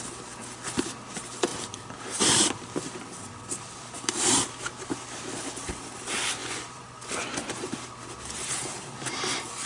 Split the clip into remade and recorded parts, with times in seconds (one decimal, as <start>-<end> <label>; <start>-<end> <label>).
0.0-6.4 recorded; 6.4-7.7 remade; 7.7-9.7 recorded